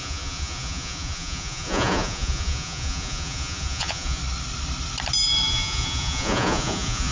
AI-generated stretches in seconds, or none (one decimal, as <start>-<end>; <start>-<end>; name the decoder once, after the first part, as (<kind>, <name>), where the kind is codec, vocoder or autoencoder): 0.0-4.2 (vocoder, Vocos); 5.5-7.1